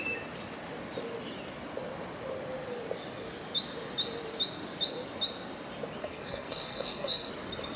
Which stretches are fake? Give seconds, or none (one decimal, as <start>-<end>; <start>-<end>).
6.0-7.3